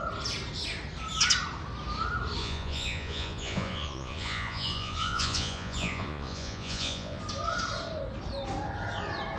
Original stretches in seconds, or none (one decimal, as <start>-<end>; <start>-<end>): 0.0-2.4; 7.2-9.4